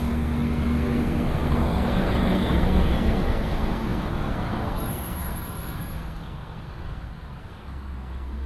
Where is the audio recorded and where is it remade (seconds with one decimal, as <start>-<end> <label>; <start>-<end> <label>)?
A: 0.0-8.5 remade